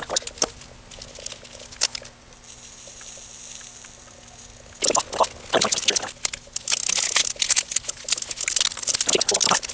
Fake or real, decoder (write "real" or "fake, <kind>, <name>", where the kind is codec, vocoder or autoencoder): real